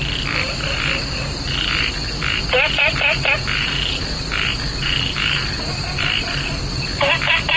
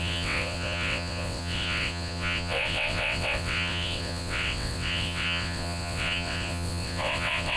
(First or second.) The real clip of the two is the first